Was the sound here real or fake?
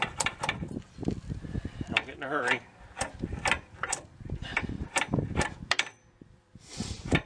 fake